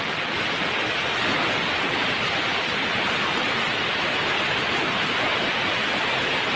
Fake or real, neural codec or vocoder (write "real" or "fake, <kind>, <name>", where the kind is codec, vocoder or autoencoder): real